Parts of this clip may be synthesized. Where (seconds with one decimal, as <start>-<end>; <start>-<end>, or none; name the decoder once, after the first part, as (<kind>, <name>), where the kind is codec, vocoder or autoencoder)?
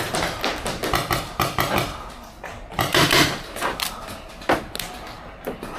none